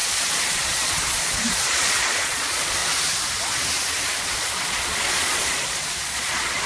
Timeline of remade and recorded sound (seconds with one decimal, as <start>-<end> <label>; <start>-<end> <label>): 0.0-2.8 remade; 2.8-4.2 recorded; 4.2-6.7 remade